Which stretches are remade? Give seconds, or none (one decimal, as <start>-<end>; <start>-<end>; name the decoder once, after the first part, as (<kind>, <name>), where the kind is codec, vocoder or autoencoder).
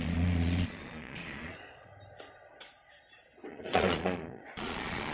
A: 0.0-1.9 (vocoder, Vocos); 3.5-5.1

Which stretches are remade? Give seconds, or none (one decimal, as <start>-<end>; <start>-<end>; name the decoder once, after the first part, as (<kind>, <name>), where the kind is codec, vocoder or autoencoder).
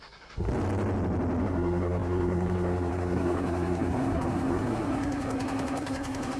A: 0.0-0.5 (codec, SNAC); 1.4-6.4